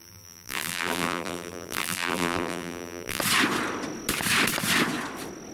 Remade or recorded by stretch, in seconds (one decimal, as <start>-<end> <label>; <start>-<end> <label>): 0.0-3.2 remade; 3.2-5.5 recorded